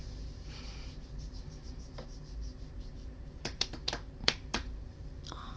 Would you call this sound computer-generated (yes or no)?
yes